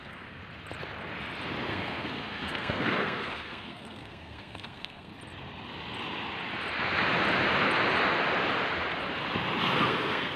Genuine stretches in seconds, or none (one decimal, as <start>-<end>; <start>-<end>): 0.4-1.7; 5.1-9.6